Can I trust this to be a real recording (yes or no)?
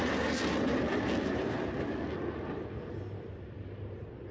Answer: yes